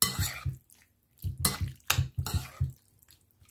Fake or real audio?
real